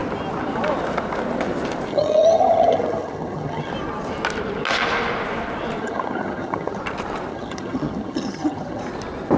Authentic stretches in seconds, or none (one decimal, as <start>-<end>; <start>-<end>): 0.0-1.9; 3.7-5.8; 6.8-7.3; 8.8-9.4